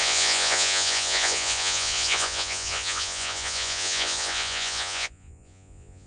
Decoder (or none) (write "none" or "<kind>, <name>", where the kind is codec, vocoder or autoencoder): vocoder, Vocos